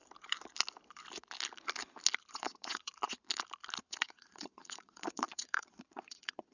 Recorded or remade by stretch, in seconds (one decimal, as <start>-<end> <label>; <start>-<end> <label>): 0.0-2.3 recorded; 2.3-2.9 remade; 2.9-3.8 recorded; 3.8-6.5 remade